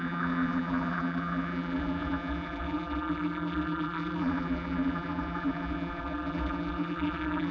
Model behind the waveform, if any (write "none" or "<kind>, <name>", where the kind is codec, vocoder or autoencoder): vocoder, BigVGAN v2